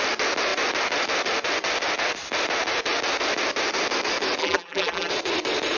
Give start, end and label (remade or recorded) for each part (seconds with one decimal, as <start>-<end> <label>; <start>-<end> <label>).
0.0-4.4 recorded; 4.4-5.1 remade; 5.1-5.8 recorded